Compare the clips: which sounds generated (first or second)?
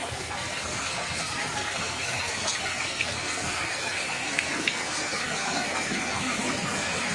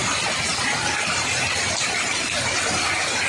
first